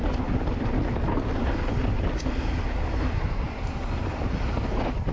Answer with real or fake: real